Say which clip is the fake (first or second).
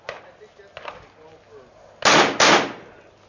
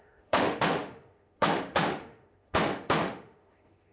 second